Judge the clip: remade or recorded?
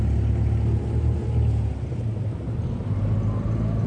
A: recorded